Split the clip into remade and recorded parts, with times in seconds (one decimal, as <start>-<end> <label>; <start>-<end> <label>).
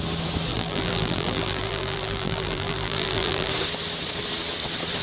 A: 0.0-0.5 recorded; 0.5-3.5 remade; 3.5-5.0 recorded